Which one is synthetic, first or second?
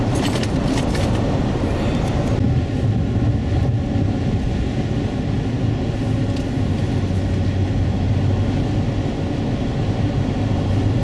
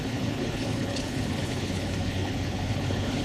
second